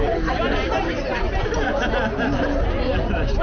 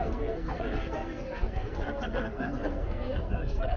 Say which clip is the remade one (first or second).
second